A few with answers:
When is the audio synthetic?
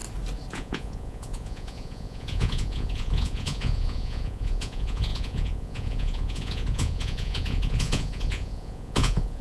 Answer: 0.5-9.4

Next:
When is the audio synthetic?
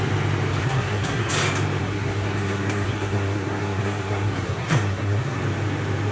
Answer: 0.6-1.3; 1.8-5.4